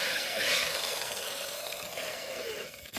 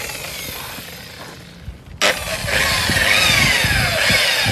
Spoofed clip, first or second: first